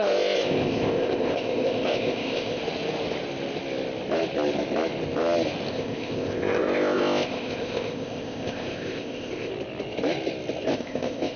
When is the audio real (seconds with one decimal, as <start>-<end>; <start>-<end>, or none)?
2.6-5.7; 9.5-10.7